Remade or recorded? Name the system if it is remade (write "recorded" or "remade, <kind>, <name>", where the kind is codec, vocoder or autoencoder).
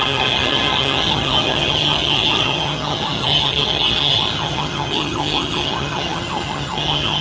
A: remade, vocoder, HiFi-GAN